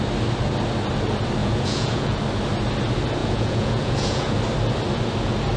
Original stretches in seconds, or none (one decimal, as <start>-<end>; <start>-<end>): 0.0-1.4; 2.2-3.2; 4.4-5.6